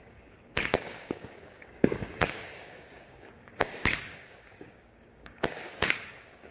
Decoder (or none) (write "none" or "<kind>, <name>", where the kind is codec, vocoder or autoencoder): codec, DAC